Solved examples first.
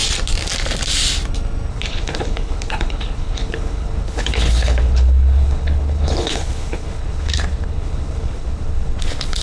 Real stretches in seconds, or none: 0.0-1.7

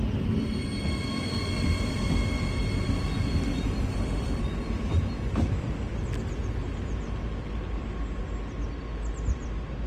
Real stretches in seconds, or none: 0.0-3.9; 4.4-9.9

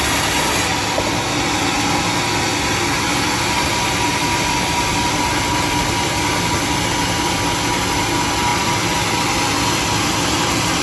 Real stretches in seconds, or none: 0.0-8.5; 9.1-10.8

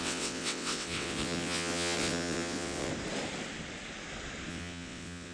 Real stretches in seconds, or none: 2.9-4.5